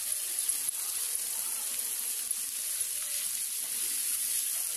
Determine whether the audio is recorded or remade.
recorded